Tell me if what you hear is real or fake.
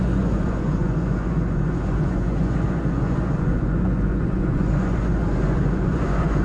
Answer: fake